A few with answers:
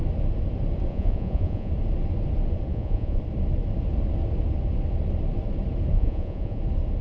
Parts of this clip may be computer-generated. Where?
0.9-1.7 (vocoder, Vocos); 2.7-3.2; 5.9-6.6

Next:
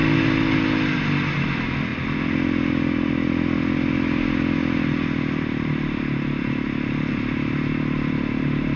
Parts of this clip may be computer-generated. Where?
none

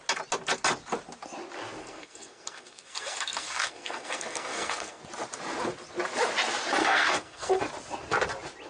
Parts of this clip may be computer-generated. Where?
1.8-5.0 (codec, SNAC); 6.8-7.6

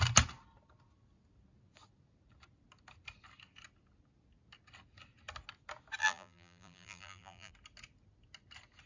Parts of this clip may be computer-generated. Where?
6.0-7.5 (vocoder, BigVGAN v2)